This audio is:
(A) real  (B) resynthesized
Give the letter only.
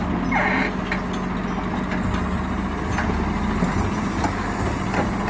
A